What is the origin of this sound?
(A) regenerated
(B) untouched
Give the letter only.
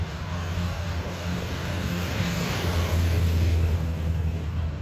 A